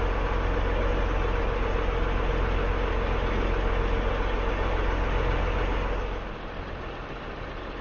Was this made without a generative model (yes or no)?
yes